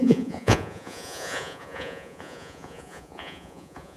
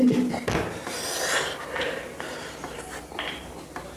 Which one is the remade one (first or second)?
first